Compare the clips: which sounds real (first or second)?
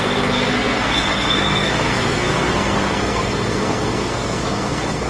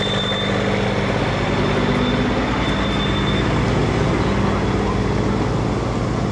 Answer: second